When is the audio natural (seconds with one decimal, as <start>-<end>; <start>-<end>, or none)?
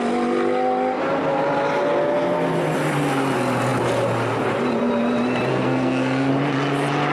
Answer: 0.0-5.5; 6.3-7.1